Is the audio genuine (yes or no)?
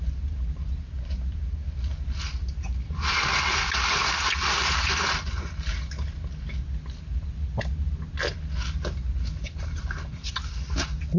yes